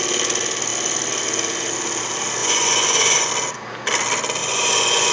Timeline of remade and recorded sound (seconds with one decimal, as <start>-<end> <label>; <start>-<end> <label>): 0.0-2.4 recorded; 2.4-3.3 remade; 3.3-4.4 recorded; 4.4-5.1 remade